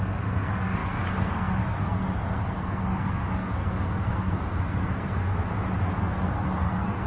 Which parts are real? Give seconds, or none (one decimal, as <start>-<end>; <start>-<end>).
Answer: 5.3-6.0